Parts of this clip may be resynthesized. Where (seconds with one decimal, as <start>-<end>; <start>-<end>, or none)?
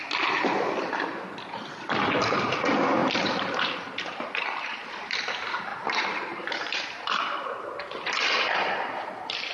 3.0-5.1; 5.7-7.2